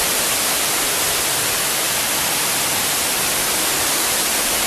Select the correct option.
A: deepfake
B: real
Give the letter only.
B